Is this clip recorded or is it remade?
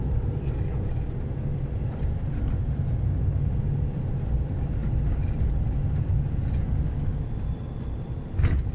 recorded